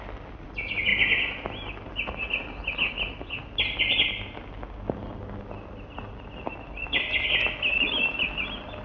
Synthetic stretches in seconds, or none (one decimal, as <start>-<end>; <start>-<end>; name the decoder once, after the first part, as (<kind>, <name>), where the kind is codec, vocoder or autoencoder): none